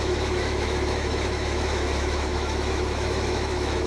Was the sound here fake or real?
fake